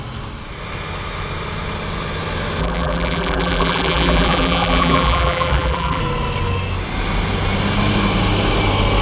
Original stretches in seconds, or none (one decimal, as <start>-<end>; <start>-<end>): 0.0-2.6; 6.0-9.0